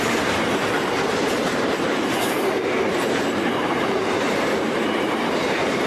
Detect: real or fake fake